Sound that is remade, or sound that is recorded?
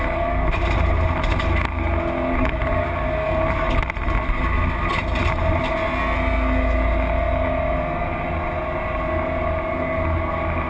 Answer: recorded